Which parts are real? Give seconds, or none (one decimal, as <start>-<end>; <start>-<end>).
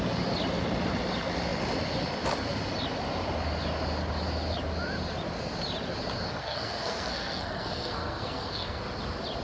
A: 0.0-6.4; 8.8-9.4